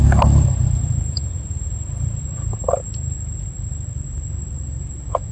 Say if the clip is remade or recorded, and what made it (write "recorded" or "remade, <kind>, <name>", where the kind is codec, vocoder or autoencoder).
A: recorded